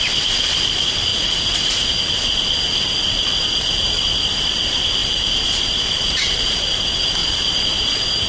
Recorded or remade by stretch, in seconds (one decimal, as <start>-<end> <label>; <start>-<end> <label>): 0.0-1.1 recorded; 1.1-2.0 remade; 2.0-5.0 recorded; 5.0-6.8 remade; 6.8-7.2 recorded; 7.2-8.3 remade